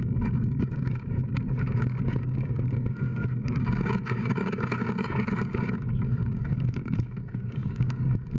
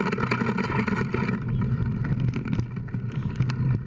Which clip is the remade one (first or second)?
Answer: first